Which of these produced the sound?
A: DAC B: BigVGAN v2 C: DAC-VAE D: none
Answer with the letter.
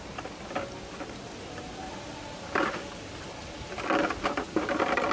D